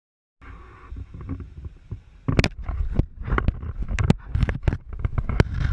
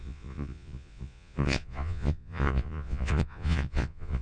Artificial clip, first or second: second